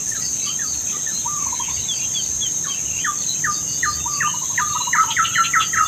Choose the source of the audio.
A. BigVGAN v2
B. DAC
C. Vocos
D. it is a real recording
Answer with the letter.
D